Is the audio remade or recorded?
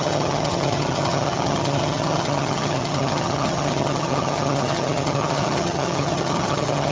remade